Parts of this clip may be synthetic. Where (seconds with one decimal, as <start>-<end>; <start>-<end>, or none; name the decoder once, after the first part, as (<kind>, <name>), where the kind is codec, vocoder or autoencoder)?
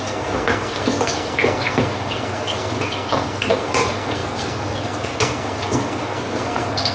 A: 0.0-6.9 (codec, SNAC)